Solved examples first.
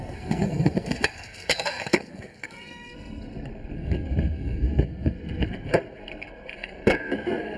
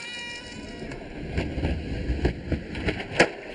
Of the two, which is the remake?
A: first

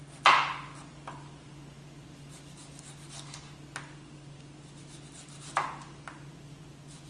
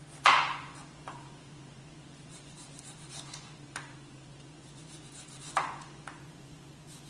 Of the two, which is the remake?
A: second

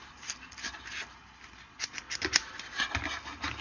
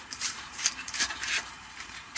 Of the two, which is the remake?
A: second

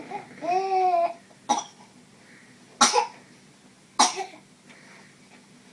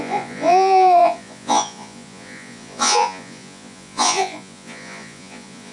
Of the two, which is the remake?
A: second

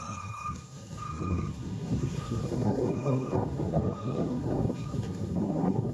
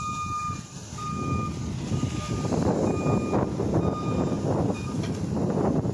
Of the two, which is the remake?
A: first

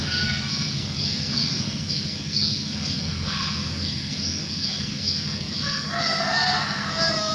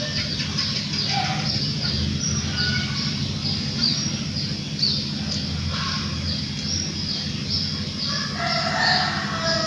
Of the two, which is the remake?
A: first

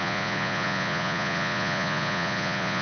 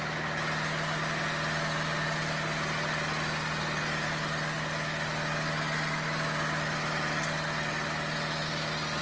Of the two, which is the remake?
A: first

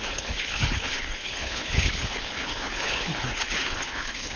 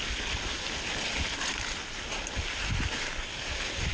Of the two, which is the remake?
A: first